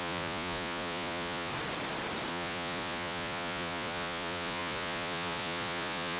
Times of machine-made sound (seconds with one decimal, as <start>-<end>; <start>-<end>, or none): 0.0-1.5; 2.3-6.2